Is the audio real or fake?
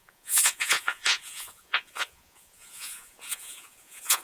fake